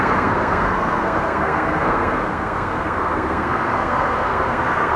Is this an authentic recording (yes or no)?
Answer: no